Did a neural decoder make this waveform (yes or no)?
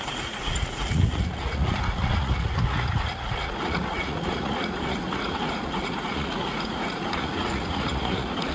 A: yes